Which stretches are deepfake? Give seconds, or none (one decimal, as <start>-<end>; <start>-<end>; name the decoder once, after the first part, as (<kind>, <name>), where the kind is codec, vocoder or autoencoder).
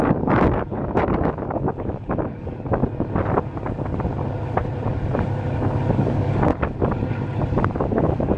0.0-2.8 (codec, DAC); 5.9-6.5; 7.6-8.4